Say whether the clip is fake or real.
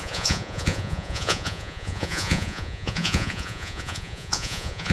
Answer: fake